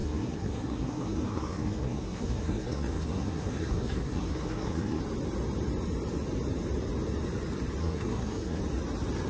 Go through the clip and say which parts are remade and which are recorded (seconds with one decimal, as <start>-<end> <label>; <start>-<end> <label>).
0.0-5.0 remade; 5.0-7.8 recorded; 7.8-8.6 remade; 8.6-9.3 recorded